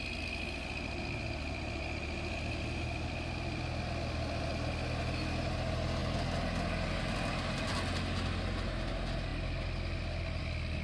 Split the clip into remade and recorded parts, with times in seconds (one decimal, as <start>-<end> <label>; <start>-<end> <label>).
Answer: 0.0-10.8 recorded